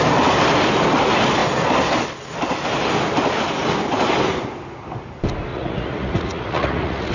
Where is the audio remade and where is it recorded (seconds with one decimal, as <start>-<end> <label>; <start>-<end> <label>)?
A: 0.0-5.5 recorded; 5.5-7.1 remade